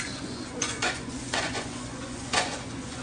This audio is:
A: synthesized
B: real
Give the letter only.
A